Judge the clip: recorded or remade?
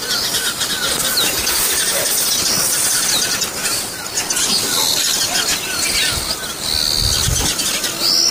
recorded